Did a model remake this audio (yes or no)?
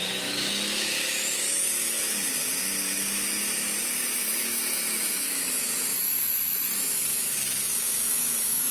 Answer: yes